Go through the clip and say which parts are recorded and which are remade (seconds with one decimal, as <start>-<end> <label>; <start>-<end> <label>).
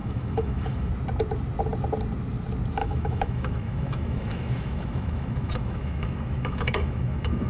0.0-0.9 remade; 0.9-2.8 recorded; 2.8-7.5 remade